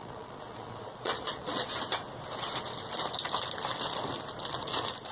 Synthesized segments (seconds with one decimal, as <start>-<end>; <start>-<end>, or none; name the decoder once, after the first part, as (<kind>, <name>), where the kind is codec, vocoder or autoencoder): 0.0-1.7 (vocoder, Vocos)